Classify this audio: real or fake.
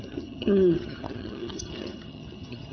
fake